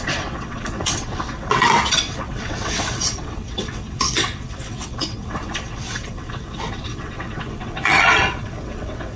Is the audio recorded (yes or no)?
no